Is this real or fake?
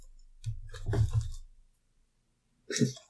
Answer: real